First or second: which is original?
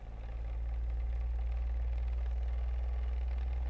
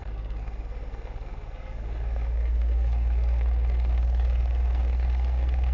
first